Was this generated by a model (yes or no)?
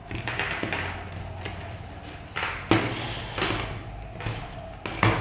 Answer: no